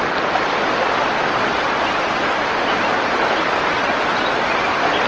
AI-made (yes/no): no